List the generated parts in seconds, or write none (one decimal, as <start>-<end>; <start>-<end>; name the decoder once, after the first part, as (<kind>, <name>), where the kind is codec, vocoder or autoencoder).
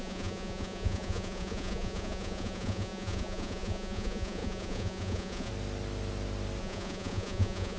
0.0-5.5 (vocoder, Vocos); 6.6-7.8